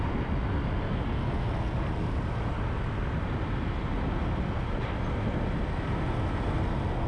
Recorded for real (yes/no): yes